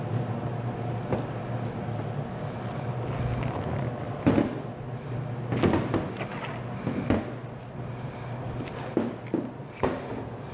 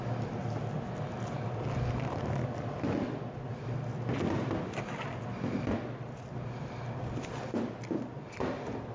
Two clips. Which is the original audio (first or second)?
first